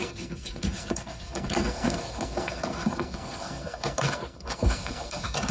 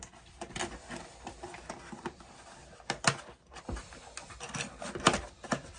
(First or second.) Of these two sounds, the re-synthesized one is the first